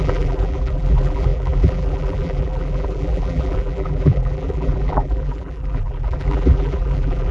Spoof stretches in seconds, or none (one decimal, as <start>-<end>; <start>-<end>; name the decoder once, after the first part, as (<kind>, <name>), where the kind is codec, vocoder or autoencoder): 0.0-7.3 (vocoder, BigVGAN v2)